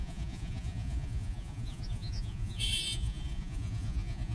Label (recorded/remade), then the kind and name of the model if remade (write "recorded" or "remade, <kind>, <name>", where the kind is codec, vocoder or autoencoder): remade, vocoder, Vocos